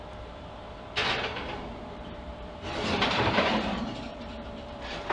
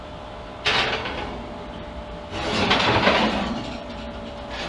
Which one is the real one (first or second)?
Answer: second